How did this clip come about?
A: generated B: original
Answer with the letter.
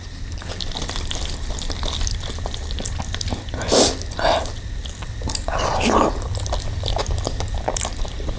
B